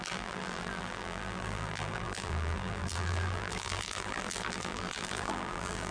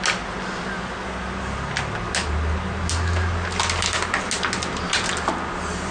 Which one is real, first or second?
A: second